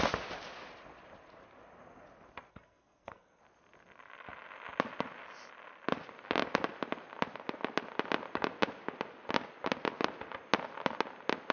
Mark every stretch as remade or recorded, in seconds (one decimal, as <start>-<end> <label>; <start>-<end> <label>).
0.0-2.5 recorded; 2.5-3.4 remade; 3.4-11.5 recorded